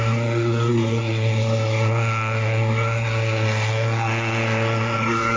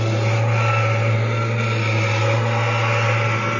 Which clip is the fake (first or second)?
first